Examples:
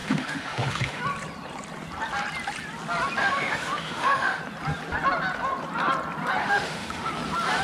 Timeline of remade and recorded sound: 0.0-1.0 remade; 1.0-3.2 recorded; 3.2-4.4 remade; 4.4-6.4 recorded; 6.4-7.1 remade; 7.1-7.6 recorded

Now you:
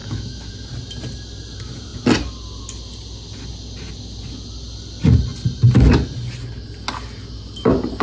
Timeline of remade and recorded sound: 0.0-0.5 remade; 0.5-8.0 recorded